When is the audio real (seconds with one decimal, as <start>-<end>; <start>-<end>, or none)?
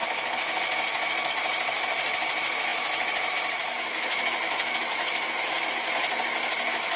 none